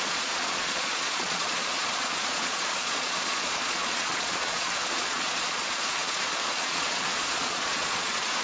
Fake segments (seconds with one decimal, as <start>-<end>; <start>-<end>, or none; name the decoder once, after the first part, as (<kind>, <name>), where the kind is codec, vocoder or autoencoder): 0.0-8.4 (vocoder, Vocos)